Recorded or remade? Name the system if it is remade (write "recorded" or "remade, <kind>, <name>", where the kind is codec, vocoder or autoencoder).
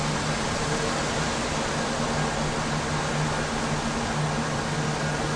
recorded